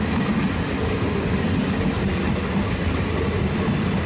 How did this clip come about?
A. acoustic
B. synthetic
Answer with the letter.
A